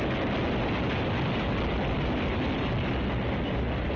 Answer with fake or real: real